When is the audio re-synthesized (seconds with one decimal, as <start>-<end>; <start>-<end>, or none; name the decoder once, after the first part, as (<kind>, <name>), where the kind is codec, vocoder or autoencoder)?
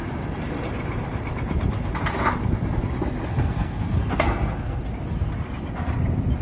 3.3-4.8 (codec, SNAC)